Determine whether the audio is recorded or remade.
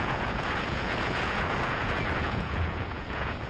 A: remade